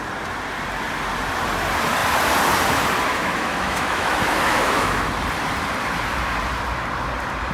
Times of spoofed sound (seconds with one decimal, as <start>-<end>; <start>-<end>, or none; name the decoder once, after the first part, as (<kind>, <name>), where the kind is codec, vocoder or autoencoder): 3.1-5.1 (autoencoder, DAC-VAE)